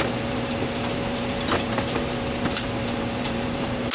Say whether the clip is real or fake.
fake